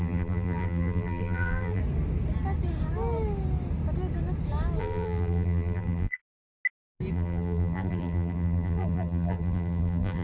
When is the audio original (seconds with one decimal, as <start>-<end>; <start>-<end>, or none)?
1.8-4.8; 6.2-7.1